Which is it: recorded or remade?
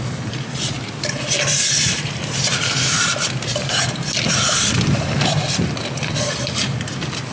recorded